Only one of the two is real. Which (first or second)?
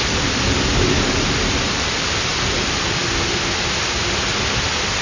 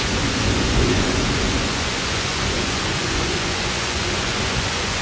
first